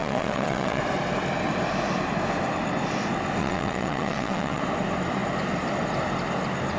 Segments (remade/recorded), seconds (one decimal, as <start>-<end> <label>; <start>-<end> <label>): 0.0-0.8 remade; 0.8-3.4 recorded; 3.4-4.6 remade; 4.6-6.8 recorded